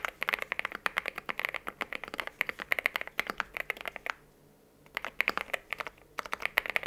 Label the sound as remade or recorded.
recorded